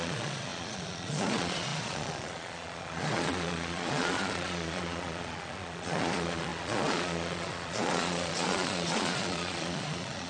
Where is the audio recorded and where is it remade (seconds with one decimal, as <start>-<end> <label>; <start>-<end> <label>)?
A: 0.0-10.3 remade